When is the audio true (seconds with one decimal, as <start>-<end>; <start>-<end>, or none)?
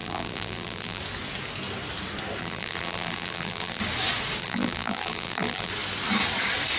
1.0-2.4; 3.8-4.4; 5.7-6.8